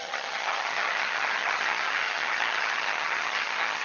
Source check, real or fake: fake